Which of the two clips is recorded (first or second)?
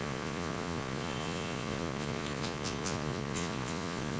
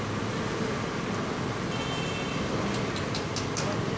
second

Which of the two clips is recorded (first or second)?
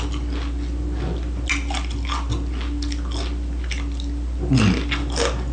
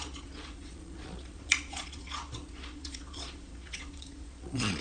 first